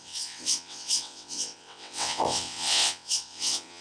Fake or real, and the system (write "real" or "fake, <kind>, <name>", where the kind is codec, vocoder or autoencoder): fake, vocoder, WaveNeXt